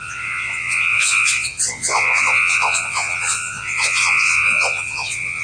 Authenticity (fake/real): fake